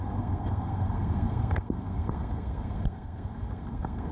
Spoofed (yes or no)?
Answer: yes